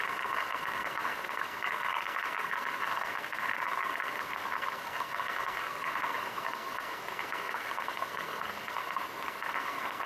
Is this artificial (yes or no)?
yes